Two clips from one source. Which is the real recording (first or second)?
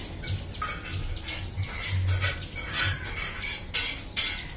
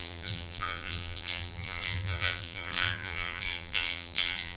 first